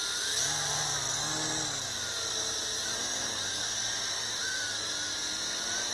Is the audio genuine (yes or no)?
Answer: yes